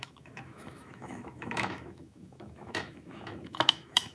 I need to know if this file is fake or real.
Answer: fake